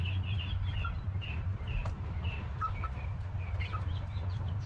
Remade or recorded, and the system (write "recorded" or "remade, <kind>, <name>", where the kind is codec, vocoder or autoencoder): remade, vocoder, BigVGAN v2